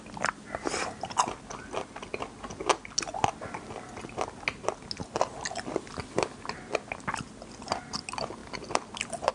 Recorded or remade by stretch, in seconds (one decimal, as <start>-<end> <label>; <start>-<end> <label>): 0.0-9.3 recorded